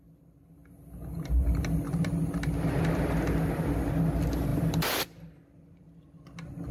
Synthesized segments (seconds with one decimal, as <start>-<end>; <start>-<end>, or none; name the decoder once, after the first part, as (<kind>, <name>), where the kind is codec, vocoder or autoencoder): none